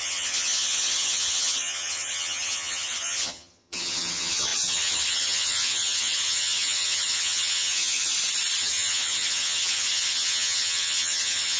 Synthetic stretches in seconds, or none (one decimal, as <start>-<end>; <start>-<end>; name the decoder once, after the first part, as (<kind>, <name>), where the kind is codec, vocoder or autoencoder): 0.0-8.1 (vocoder, HiFi-GAN); 8.6-11.6